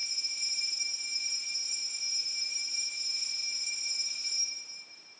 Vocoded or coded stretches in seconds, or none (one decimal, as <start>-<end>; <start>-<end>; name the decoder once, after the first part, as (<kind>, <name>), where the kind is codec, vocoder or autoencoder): 0.5-1.6 (vocoder, BigVGAN v2); 2.2-3.4; 4.1-5.2